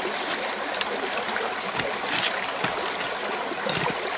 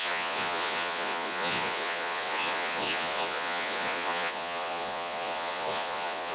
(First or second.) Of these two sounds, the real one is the first